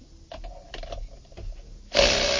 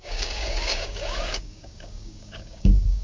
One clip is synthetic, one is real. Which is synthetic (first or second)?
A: second